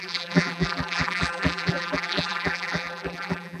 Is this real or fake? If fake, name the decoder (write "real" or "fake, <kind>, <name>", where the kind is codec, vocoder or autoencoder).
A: fake, vocoder, BigVGAN v2